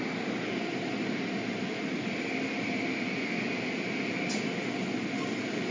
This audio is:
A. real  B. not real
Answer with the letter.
A